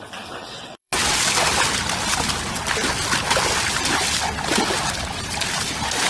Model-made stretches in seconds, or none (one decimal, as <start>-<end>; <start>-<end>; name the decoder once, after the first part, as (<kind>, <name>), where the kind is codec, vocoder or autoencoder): 0.4-1.2 (vocoder, WaveNeXt)